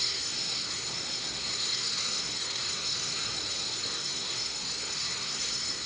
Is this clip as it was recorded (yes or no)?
no